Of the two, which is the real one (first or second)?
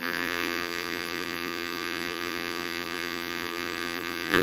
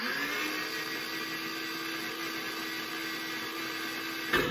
second